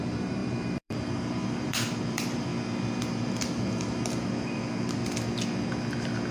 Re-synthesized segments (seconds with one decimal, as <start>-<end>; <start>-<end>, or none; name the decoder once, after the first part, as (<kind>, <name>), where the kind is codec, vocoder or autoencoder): 0.0-2.5 (vocoder, BigVGAN v2); 3.0-5.0